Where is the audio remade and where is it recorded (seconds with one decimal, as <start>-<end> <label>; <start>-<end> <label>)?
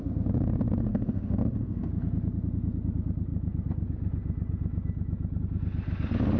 0.0-0.9 recorded; 0.9-1.9 remade; 1.9-6.4 recorded